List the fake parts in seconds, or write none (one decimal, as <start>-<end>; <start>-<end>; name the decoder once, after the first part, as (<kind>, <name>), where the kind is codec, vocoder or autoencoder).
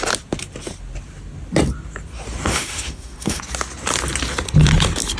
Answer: 2.5-3.4 (autoencoder, DAC-VAE)